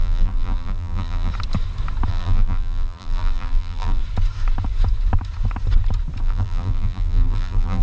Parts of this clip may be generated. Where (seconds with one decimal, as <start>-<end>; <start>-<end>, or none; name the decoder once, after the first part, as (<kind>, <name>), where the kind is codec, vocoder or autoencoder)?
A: 0.0-1.3 (vocoder, BigVGAN v2); 2.1-4.0; 6.2-7.8